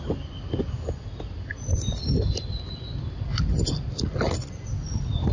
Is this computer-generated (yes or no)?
no